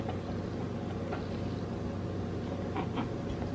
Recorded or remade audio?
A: recorded